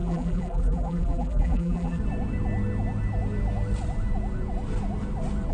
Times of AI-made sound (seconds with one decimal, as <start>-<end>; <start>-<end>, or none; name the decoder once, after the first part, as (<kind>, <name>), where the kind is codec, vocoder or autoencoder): 0.0-2.0 (vocoder, BigVGAN v2)